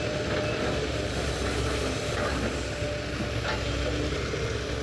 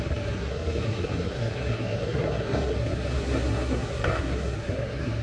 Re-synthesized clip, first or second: second